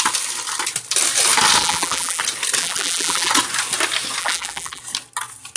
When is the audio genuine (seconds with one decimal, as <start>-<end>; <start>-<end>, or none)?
0.0-1.6; 2.2-2.6; 3.3-4.2; 4.8-5.6